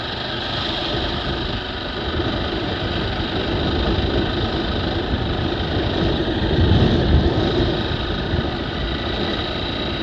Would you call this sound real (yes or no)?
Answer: yes